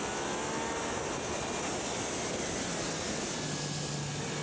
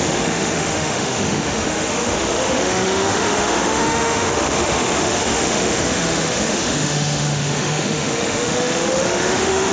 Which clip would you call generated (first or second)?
second